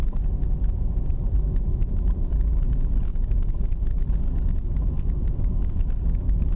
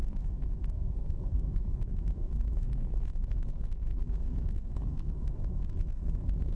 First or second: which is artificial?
second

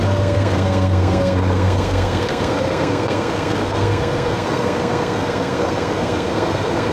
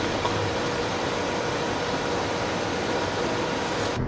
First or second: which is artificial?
first